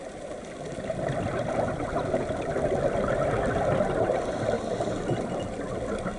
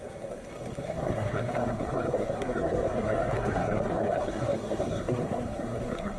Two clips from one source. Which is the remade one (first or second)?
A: second